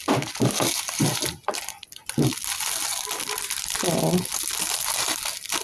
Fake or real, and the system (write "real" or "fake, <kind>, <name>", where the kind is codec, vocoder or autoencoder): real